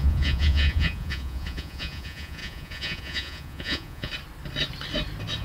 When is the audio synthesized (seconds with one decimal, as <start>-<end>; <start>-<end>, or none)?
0.0-4.1